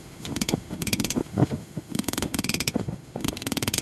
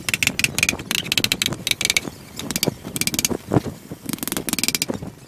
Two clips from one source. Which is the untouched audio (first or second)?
second